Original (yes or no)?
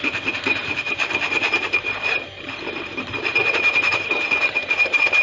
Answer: no